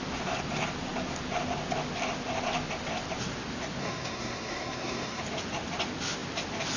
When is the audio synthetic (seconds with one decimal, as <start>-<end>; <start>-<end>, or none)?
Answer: 3.8-5.2